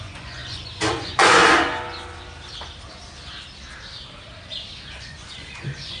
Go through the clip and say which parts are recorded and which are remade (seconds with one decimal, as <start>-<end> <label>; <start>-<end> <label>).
0.0-1.4 remade; 1.4-5.0 recorded; 5.0-6.0 remade